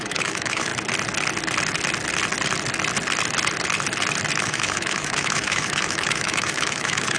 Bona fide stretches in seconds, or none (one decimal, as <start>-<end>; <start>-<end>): 0.7-4.4